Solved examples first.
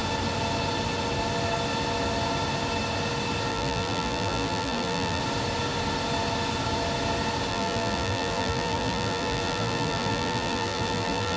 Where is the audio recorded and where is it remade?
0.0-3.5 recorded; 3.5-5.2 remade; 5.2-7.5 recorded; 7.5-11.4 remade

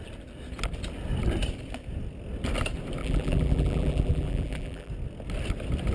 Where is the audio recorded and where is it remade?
0.0-3.0 recorded; 3.0-4.9 remade; 4.9-5.9 recorded

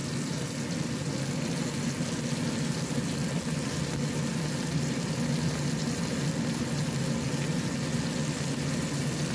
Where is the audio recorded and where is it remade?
0.0-9.3 recorded

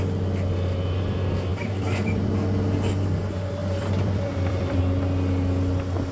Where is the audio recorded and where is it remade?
0.0-1.5 recorded; 1.5-2.3 remade; 2.3-3.6 recorded; 3.6-4.8 remade; 4.8-6.1 recorded